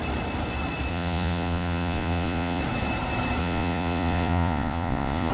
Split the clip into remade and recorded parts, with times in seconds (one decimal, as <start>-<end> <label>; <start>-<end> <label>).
0.0-0.9 recorded; 0.9-2.6 remade; 2.6-3.4 recorded; 3.4-5.3 remade